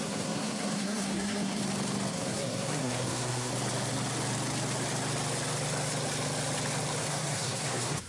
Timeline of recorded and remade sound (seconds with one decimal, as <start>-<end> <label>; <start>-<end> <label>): 0.0-1.6 remade; 1.6-2.1 recorded; 2.1-3.5 remade; 3.5-7.0 recorded; 7.0-8.1 remade